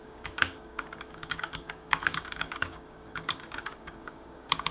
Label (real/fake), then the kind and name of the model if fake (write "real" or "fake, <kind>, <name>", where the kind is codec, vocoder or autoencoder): fake, codec, DAC